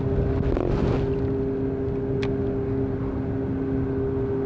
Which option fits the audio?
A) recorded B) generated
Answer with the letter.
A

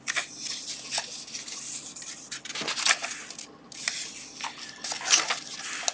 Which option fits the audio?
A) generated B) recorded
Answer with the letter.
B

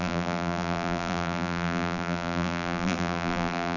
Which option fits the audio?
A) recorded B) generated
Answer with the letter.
B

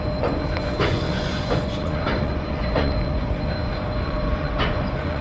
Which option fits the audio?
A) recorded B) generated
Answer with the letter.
B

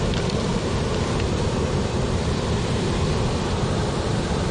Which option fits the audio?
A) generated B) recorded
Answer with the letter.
A